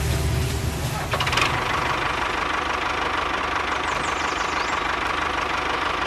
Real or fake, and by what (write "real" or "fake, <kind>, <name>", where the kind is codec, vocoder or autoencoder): real